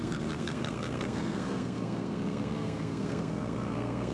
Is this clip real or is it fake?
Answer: fake